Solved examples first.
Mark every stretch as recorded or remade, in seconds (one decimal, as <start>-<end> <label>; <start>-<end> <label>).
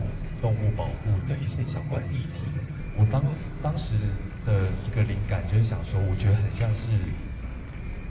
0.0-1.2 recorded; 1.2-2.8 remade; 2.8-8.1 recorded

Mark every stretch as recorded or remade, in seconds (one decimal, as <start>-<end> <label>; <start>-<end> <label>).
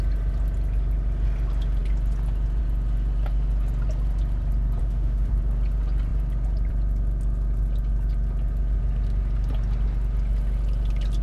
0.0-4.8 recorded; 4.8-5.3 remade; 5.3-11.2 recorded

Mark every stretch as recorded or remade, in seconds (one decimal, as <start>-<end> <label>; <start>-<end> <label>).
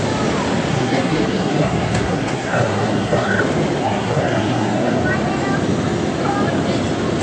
0.0-0.7 recorded; 0.7-3.4 remade; 3.4-3.8 recorded; 3.8-5.0 remade; 5.0-7.2 recorded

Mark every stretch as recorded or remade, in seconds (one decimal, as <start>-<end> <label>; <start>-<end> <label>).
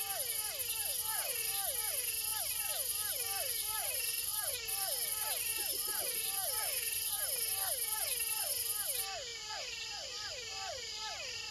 0.0-2.3 recorded; 2.3-7.1 remade; 7.1-9.3 recorded; 9.3-11.5 remade